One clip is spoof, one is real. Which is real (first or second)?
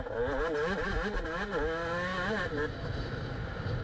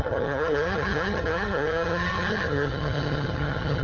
first